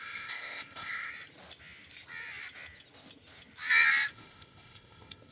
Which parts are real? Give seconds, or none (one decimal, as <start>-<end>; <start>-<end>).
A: 1.1-4.1